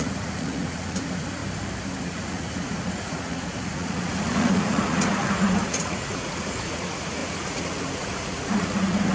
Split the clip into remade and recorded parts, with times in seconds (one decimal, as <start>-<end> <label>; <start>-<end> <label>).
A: 0.0-1.4 remade; 1.4-2.0 recorded; 2.0-9.1 remade